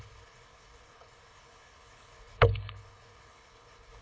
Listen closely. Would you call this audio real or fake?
fake